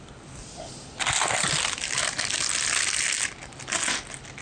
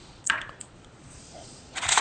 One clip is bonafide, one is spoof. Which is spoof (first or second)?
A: second